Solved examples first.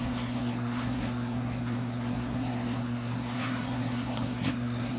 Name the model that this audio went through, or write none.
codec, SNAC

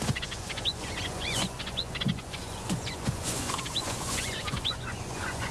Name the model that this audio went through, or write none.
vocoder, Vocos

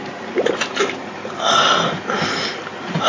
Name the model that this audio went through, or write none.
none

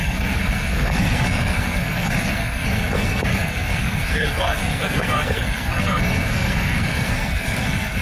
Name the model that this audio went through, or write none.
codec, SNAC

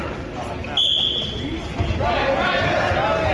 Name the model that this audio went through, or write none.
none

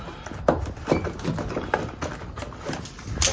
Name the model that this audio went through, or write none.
none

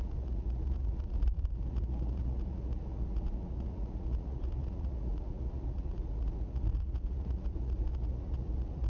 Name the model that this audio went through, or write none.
vocoder, Vocos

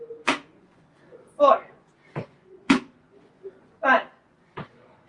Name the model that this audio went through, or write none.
vocoder, Vocos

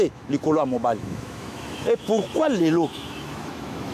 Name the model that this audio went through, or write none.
autoencoder, DAC-VAE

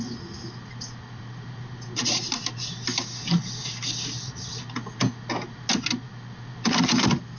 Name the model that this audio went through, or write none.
none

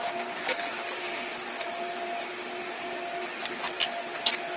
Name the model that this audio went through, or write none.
none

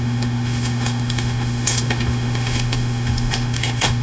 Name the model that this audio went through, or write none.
autoencoder, DAC-VAE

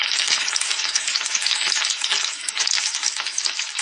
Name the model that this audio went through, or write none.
autoencoder, DAC-VAE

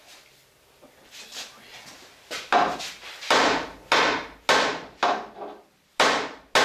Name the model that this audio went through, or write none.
none